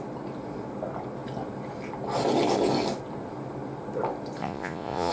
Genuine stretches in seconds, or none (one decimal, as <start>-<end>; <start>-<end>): 0.0-4.4